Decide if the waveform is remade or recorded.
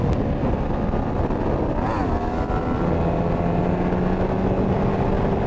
recorded